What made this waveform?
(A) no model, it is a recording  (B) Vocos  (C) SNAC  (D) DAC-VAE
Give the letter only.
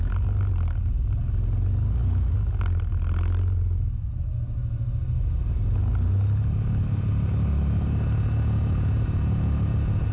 A